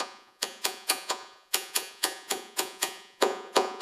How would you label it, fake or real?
fake